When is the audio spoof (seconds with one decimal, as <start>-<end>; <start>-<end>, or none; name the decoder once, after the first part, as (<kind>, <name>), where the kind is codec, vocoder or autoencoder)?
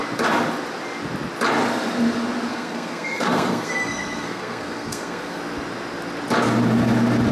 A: 2.5-5.4 (codec, SNAC)